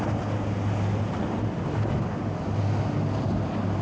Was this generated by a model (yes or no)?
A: no